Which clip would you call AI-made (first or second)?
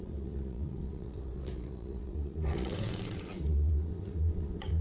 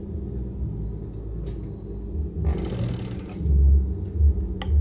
first